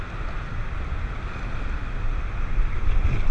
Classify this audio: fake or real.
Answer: real